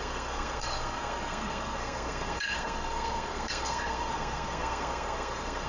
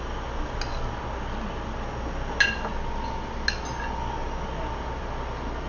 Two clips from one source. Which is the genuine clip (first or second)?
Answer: second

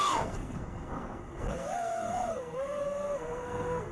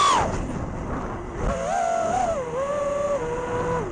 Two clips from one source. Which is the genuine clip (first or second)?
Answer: second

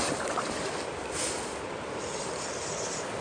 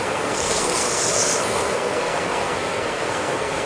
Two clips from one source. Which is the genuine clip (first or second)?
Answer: first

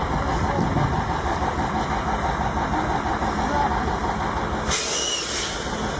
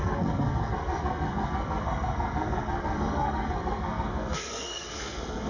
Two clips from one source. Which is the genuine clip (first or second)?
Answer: first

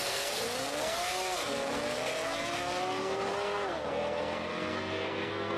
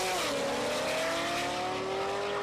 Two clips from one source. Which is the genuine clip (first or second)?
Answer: second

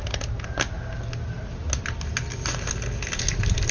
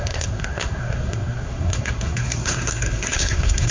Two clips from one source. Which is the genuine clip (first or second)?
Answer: first